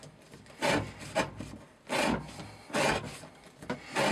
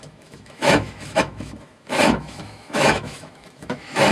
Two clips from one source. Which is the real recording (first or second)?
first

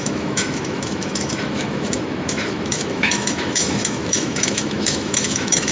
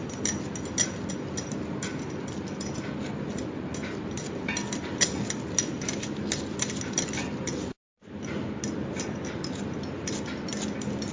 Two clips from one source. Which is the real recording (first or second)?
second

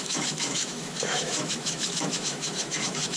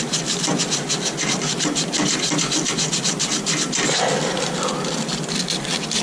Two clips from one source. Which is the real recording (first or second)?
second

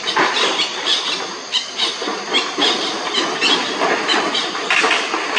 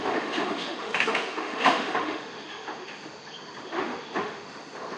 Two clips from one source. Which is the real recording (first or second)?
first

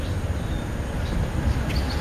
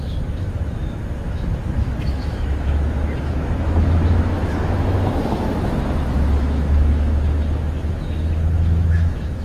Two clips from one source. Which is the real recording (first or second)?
first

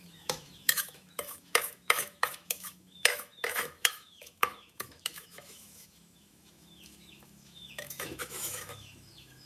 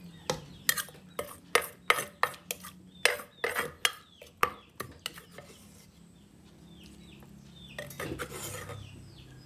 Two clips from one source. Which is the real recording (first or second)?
second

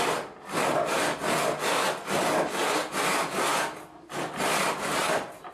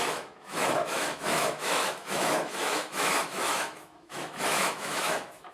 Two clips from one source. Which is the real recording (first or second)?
first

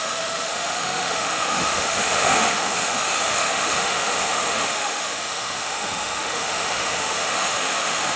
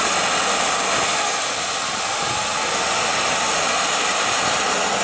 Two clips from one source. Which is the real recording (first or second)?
second